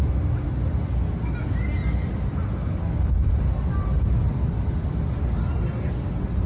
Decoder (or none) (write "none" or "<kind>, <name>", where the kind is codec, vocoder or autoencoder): none